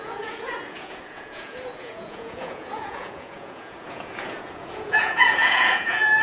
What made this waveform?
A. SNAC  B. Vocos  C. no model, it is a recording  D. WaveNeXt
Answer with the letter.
B